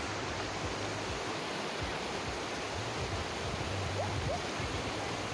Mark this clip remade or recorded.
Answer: recorded